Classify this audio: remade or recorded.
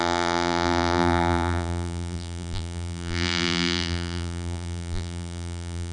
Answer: remade